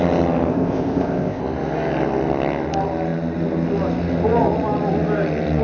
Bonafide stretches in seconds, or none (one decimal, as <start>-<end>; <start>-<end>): 0.0-0.5; 1.4-5.6